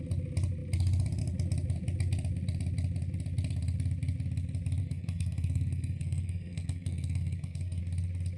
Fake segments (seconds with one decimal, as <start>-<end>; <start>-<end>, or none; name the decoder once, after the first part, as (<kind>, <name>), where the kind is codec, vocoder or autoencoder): 4.8-7.8 (codec, SNAC)